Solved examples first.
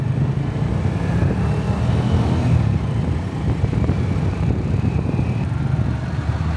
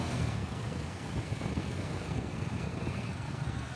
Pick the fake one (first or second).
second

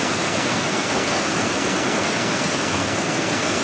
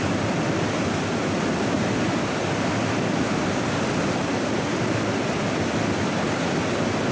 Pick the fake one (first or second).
first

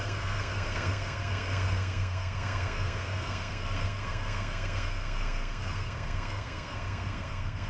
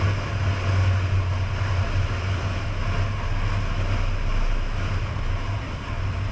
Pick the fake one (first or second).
first